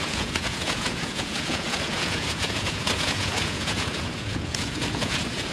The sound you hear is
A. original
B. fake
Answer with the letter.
B